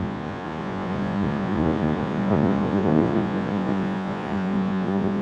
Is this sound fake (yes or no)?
yes